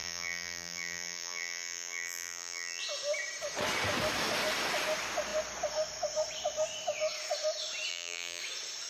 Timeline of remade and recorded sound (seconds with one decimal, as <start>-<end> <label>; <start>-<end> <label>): 0.0-2.8 remade; 2.8-7.9 recorded; 7.9-8.4 remade; 8.4-8.9 recorded